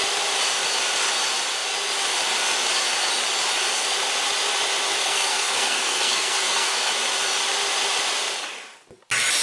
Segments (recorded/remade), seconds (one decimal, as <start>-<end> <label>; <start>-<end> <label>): 0.0-5.0 recorded; 5.0-6.9 remade; 6.9-9.4 recorded